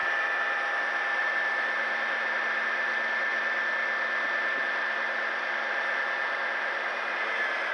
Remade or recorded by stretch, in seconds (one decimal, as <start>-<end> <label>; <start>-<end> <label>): 0.0-1.2 recorded; 1.2-3.3 remade; 3.3-7.1 recorded; 7.1-7.7 remade